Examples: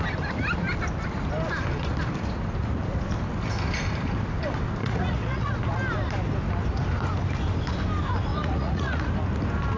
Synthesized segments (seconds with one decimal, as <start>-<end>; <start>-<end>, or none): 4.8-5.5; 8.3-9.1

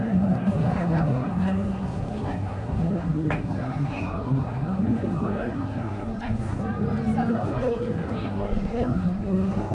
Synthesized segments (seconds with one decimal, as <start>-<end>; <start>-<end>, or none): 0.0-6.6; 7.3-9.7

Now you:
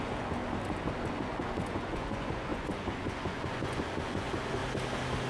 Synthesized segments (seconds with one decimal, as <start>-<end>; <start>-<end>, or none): 0.0-0.4; 1.1-4.6